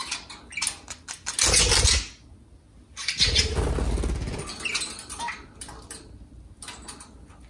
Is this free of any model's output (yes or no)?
yes